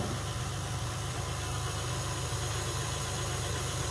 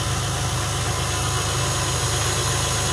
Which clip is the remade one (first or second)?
first